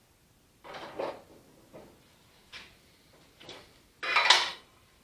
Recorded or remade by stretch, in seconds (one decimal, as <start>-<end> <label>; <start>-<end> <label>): 0.0-4.5 recorded; 4.5-5.0 remade